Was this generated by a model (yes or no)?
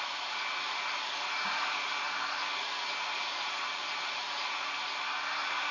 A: no